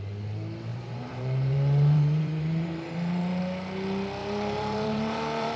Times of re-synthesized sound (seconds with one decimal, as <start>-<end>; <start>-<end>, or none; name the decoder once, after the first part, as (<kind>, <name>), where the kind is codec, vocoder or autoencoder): 0.7-3.4 (vocoder, BigVGAN v2); 4.2-5.6